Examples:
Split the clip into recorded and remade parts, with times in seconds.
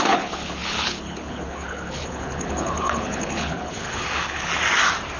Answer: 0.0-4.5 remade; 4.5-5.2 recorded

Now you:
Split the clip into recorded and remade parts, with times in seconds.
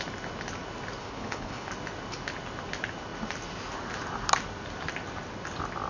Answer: 0.0-1.0 recorded; 1.0-1.7 remade; 1.7-5.9 recorded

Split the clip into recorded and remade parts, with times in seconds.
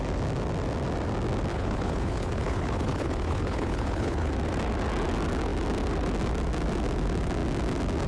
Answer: 0.0-1.5 recorded; 1.5-4.3 remade; 4.3-8.1 recorded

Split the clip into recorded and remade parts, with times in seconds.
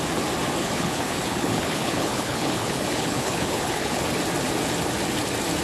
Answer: 0.0-0.6 recorded; 0.6-4.0 remade; 4.0-5.6 recorded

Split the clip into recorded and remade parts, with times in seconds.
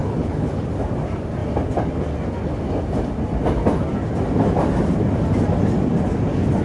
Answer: 0.0-0.5 remade; 0.5-6.6 recorded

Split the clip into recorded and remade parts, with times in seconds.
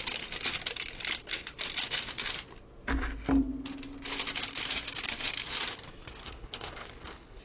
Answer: 0.0-6.2 recorded; 6.2-7.4 remade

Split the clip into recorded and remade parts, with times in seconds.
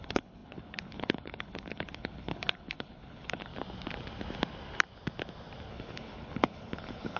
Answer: 0.0-3.5 remade; 3.5-5.7 recorded; 5.7-7.2 remade